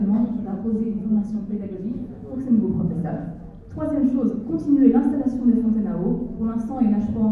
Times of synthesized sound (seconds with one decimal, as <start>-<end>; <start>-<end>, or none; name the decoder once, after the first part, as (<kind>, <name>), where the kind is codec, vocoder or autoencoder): 0.7-3.5 (autoencoder, DAC-VAE)